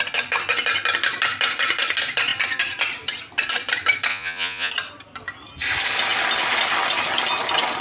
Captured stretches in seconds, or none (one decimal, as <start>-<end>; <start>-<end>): 0.0-4.1; 4.7-7.8